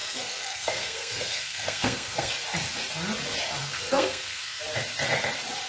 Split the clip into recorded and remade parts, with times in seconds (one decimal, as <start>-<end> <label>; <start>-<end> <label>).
0.0-2.3 remade; 2.3-3.6 recorded; 3.6-4.6 remade; 4.6-5.7 recorded